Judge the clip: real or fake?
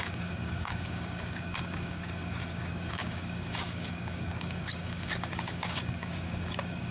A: fake